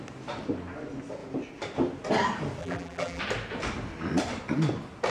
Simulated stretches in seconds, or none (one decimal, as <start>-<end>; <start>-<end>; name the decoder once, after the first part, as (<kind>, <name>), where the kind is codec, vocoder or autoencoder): 2.6-3.2 (vocoder, BigVGAN v2)